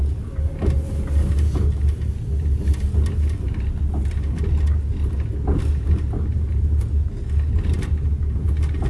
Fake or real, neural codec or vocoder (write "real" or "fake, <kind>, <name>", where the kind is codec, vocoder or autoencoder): real